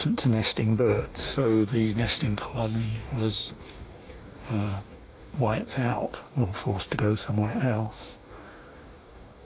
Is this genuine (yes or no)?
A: no